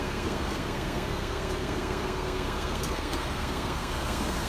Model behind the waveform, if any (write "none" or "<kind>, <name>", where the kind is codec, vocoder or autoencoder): codec, SNAC